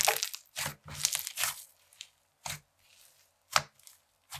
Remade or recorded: recorded